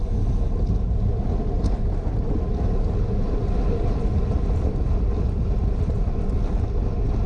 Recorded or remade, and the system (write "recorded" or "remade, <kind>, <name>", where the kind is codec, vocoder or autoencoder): recorded